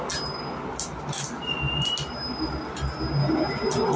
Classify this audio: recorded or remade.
recorded